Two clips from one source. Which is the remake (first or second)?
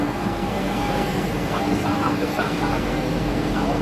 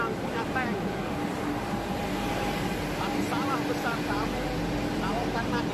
first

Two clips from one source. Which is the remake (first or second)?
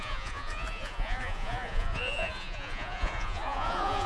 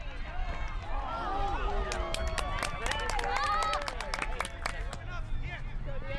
first